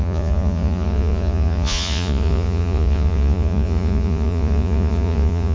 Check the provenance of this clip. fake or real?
fake